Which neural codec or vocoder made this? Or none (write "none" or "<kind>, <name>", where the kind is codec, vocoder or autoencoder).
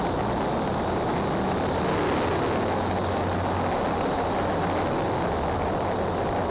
none